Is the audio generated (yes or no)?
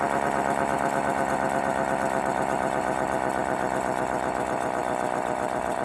yes